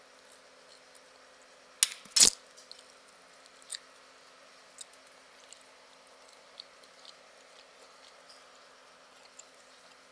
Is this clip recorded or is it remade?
recorded